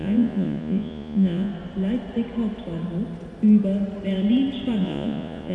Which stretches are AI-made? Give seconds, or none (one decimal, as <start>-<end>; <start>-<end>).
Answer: 0.0-1.5; 4.8-5.5